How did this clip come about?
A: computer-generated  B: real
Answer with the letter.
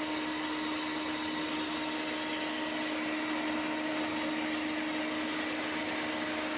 B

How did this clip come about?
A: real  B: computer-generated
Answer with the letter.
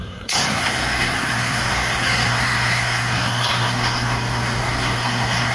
B